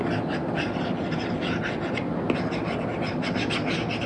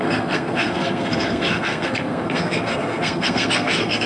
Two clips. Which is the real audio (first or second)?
first